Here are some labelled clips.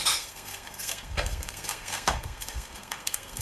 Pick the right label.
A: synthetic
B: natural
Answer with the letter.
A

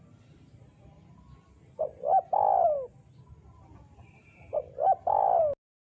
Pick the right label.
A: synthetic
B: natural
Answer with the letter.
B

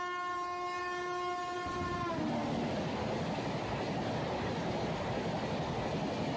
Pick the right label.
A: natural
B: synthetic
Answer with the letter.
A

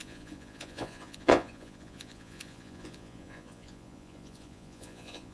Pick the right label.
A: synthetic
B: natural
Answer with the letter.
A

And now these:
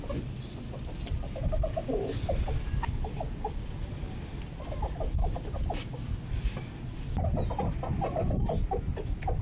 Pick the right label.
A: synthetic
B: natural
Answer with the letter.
B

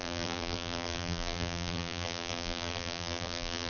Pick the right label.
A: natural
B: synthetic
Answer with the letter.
B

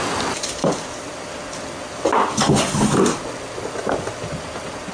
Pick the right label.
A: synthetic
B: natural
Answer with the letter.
B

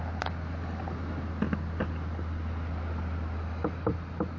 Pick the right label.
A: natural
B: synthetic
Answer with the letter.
A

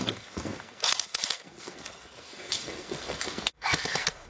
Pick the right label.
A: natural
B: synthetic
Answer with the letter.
B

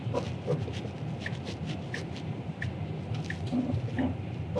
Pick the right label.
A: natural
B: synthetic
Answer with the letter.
A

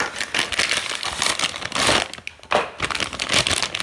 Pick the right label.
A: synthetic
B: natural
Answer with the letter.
B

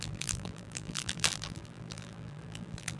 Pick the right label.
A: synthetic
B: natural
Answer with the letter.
A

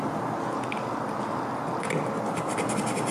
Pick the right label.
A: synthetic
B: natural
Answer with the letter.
B